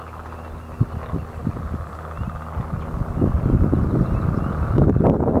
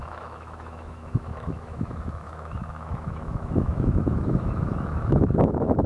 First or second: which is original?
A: first